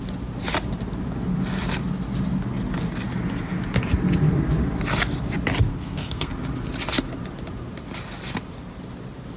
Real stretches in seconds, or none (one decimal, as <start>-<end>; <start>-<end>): 0.0-5.7; 6.3-9.4